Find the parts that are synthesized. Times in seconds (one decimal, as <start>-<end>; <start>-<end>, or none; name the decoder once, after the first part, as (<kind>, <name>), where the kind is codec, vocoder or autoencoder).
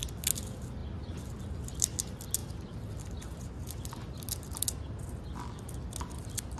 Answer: none